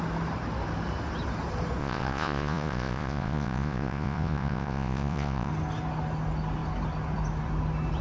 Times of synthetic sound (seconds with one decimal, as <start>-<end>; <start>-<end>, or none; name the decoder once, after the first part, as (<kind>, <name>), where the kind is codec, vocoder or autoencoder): 1.8-5.5 (vocoder, Vocos)